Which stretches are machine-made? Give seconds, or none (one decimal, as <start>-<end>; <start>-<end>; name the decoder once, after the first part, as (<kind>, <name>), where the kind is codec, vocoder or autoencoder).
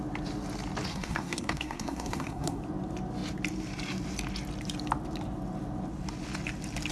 0.9-2.6 (codec, SNAC)